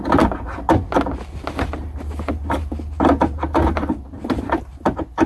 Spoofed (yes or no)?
no